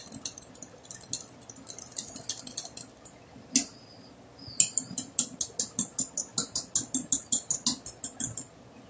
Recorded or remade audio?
recorded